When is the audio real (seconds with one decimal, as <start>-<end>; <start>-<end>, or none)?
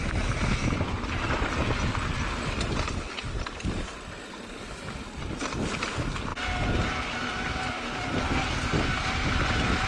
0.0-9.9